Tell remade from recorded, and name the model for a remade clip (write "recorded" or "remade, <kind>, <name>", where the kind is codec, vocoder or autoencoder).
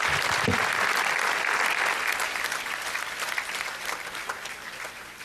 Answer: recorded